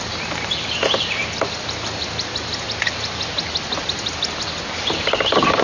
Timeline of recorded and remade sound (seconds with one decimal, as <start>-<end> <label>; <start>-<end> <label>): 0.0-5.6 recorded